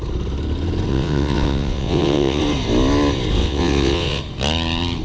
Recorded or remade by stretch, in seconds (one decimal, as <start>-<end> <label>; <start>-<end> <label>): 0.0-0.9 recorded; 0.9-2.4 remade; 2.4-3.4 recorded; 3.4-4.2 remade; 4.2-5.0 recorded